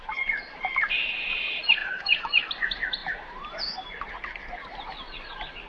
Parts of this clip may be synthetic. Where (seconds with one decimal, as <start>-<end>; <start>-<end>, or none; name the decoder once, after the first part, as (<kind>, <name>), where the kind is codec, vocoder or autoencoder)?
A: 1.8-2.5 (autoencoder, DAC-VAE)